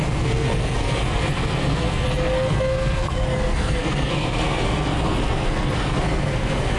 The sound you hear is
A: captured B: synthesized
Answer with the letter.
B